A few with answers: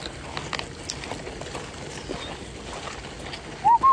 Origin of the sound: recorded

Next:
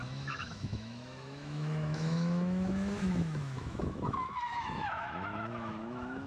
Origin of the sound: remade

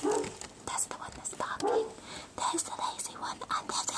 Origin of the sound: recorded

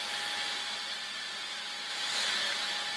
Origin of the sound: recorded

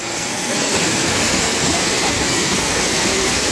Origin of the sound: remade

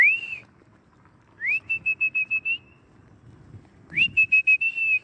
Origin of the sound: recorded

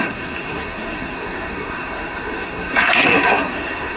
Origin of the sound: remade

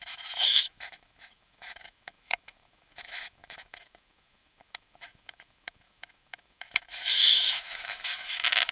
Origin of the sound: remade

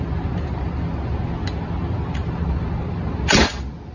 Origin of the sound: recorded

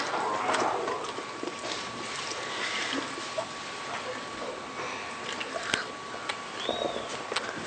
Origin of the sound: recorded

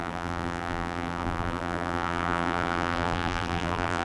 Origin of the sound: remade